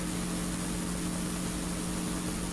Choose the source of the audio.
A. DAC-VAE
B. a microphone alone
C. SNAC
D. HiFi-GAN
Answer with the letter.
B